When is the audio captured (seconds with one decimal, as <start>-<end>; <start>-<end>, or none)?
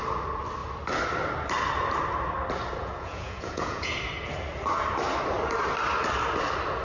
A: 0.0-2.8; 3.9-6.8